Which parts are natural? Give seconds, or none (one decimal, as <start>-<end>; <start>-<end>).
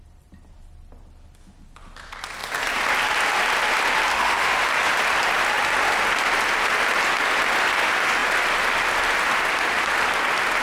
0.0-4.1; 4.6-10.6